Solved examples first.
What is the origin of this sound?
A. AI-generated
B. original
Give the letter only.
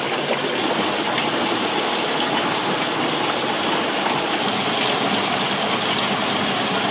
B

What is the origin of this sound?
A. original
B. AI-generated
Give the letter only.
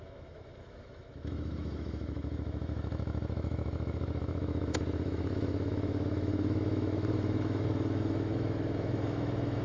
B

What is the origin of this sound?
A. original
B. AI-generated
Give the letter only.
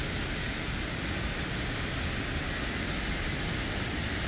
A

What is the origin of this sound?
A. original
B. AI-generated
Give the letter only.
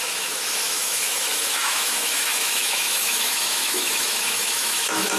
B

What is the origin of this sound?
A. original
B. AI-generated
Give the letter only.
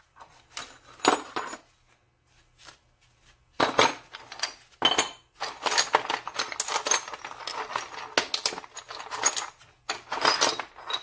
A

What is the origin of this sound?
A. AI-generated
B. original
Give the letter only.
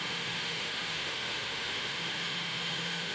A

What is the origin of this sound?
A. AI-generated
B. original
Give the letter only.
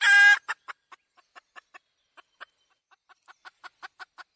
B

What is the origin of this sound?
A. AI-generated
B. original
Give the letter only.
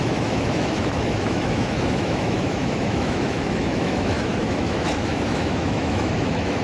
A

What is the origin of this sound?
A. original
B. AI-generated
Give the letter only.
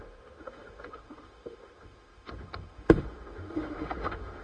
B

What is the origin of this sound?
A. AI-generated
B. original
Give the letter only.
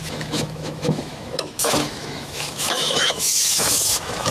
A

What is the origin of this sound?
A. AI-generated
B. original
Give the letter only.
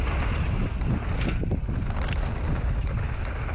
B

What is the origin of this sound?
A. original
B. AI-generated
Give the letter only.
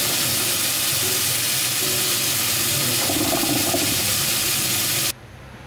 A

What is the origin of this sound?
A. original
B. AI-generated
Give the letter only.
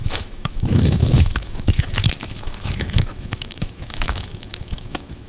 B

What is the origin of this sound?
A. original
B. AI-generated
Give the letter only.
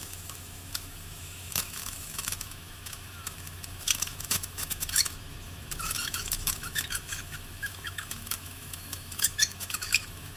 B